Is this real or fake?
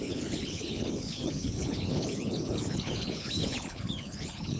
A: fake